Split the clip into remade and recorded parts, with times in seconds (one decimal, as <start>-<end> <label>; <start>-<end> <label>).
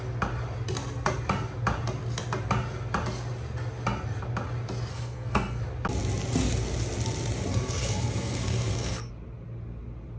0.0-4.9 recorded; 4.9-5.6 remade; 5.6-7.5 recorded; 7.5-9.1 remade; 9.1-10.2 recorded